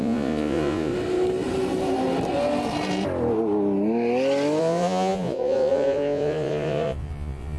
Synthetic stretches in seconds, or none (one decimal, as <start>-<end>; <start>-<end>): 0.0-0.9; 4.6-7.6